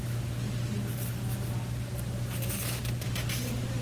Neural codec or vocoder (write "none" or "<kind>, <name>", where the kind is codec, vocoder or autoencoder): none